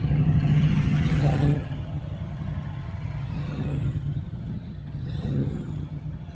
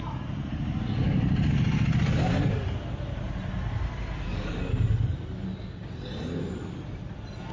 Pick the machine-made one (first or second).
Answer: first